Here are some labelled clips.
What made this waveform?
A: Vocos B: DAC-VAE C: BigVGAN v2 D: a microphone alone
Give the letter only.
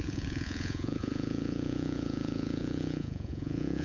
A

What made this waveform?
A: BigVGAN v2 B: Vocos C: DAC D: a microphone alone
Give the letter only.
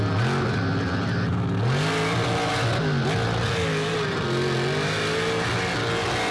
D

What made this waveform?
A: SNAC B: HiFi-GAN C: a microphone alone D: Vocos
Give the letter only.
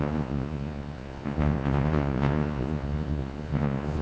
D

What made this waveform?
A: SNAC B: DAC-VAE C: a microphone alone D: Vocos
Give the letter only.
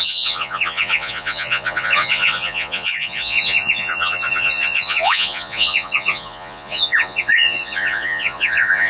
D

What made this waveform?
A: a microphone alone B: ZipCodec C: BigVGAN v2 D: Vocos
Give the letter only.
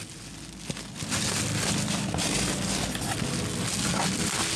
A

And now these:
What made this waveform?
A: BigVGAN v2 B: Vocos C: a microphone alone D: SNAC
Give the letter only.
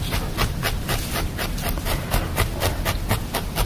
C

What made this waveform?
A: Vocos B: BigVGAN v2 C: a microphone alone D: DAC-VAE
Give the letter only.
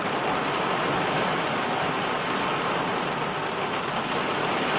C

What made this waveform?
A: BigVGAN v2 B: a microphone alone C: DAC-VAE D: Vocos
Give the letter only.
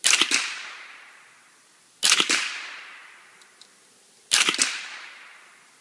B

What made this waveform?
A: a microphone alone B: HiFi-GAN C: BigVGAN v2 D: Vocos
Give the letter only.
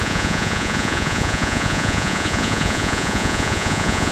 D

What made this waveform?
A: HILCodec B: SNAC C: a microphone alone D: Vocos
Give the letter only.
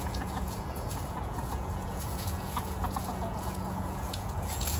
D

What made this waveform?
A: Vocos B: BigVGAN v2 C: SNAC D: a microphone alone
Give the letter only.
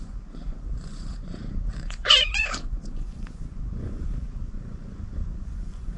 A